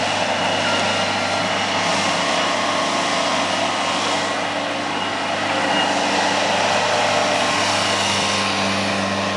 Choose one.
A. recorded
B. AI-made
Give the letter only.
A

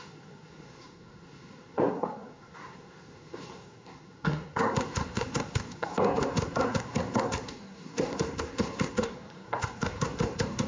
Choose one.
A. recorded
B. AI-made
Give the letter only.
B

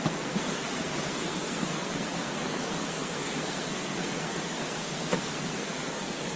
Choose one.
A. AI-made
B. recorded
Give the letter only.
A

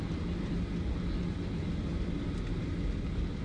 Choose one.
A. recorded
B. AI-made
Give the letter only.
A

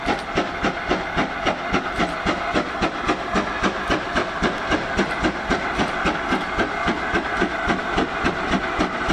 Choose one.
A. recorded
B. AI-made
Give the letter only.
A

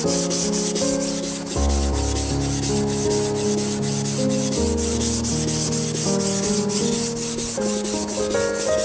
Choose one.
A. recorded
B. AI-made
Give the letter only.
A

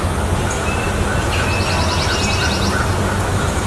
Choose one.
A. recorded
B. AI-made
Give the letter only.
A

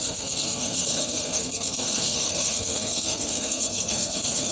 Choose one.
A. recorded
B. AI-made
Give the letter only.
B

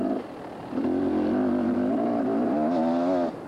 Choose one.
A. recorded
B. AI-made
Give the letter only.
A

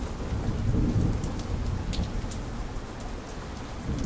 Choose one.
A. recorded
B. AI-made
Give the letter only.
A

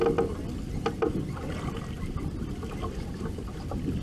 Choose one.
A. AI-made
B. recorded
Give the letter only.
B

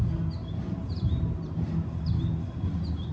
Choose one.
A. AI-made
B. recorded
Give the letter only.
B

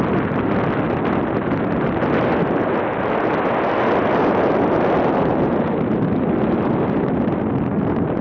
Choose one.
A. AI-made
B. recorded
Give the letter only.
B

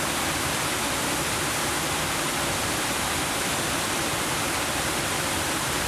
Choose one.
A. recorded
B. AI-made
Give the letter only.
A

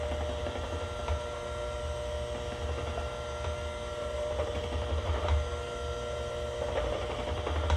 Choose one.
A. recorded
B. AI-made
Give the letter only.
A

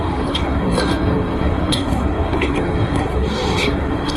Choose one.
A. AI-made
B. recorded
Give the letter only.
A